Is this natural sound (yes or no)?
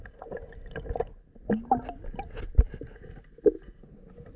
yes